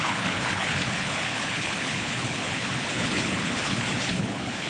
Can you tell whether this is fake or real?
fake